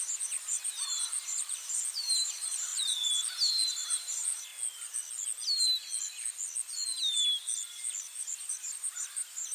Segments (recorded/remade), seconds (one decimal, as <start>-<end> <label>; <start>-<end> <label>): 0.0-2.7 remade; 2.7-3.7 recorded; 3.7-4.5 remade; 4.5-8.2 recorded; 8.2-9.5 remade